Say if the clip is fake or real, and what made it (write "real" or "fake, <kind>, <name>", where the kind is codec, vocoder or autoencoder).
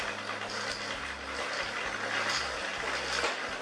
real